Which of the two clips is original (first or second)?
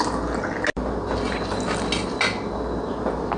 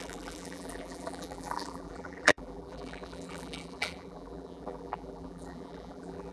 first